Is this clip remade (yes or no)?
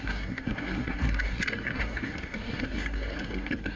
yes